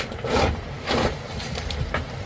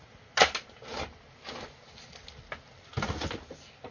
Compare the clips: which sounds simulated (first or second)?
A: first